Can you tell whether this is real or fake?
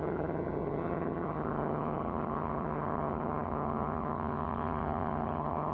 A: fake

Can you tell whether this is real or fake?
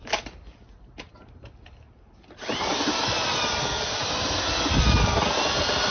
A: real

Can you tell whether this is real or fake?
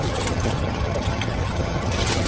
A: fake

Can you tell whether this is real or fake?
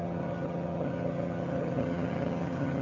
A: fake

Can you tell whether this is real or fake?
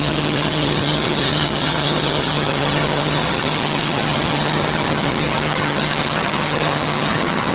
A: fake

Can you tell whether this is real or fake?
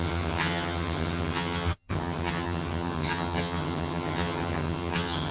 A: fake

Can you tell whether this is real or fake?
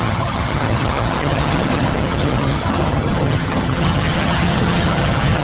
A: fake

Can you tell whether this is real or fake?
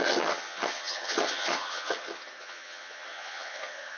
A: fake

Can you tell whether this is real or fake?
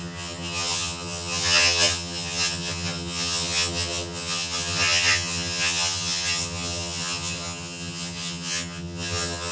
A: fake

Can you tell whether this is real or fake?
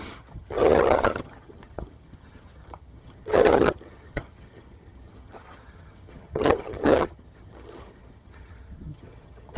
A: fake